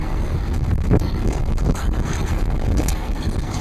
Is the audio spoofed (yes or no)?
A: yes